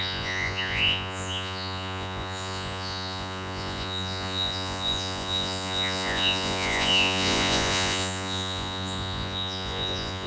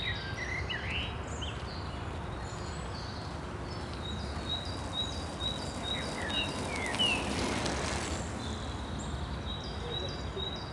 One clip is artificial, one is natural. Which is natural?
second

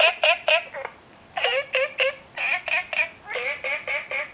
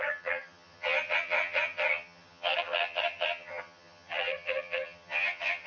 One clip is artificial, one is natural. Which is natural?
first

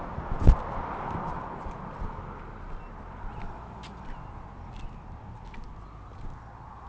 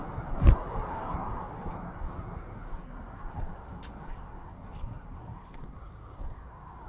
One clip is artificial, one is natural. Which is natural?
first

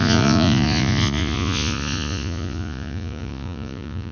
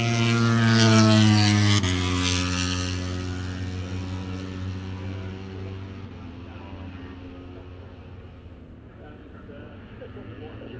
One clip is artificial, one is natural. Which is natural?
second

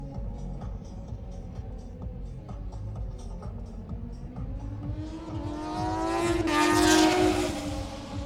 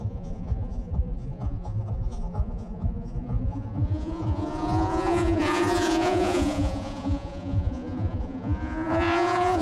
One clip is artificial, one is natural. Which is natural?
first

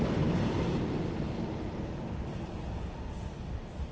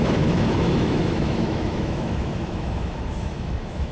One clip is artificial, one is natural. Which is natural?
first